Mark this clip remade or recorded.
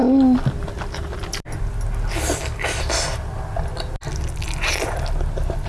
recorded